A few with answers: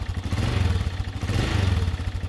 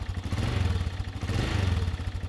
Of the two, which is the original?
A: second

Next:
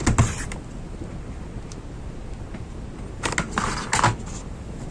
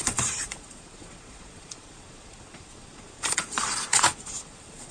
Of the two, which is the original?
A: first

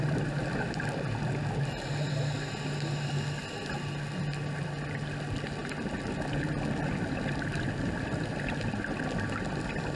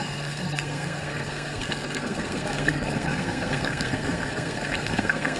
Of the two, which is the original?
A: first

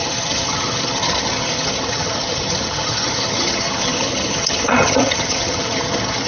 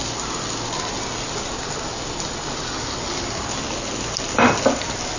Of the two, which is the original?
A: second